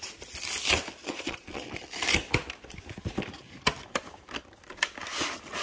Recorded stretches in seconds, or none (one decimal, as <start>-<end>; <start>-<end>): 0.0-1.0; 1.8-5.6